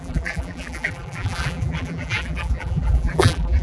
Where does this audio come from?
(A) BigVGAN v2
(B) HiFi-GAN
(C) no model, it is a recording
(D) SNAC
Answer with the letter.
A